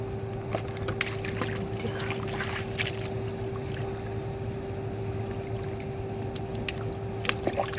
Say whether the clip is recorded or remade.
recorded